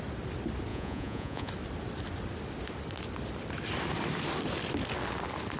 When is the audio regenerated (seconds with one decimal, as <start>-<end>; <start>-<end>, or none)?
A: 0.7-1.5